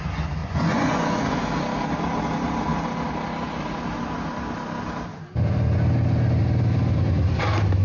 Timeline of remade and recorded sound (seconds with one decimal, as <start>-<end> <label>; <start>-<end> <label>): 0.0-0.4 recorded; 0.4-1.4 remade; 1.4-7.8 recorded